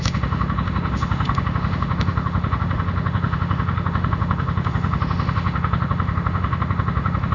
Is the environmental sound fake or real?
fake